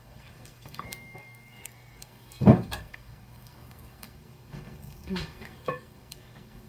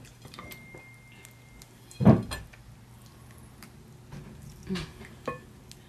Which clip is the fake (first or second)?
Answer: first